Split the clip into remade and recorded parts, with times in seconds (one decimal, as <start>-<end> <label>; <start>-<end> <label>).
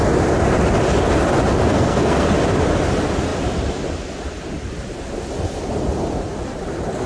0.0-1.7 recorded; 1.7-2.3 remade; 2.3-7.1 recorded